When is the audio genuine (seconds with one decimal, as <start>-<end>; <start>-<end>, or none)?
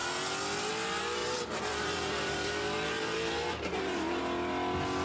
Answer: 0.0-1.2; 4.2-5.0